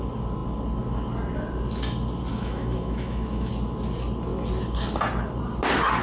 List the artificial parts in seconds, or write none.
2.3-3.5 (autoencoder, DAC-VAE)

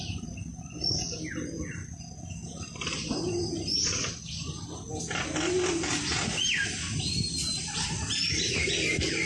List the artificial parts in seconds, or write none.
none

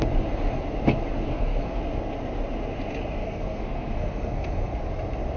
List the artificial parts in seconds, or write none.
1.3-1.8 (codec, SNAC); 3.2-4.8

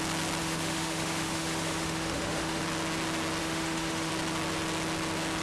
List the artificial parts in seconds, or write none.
0.4-2.6 (autoencoder, DAC-VAE); 3.4-4.1